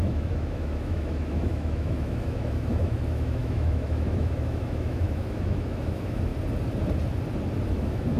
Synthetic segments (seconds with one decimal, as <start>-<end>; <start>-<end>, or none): 0.0-6.3; 7.7-8.2